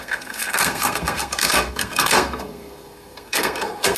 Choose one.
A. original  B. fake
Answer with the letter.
B